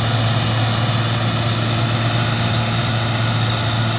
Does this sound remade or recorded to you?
recorded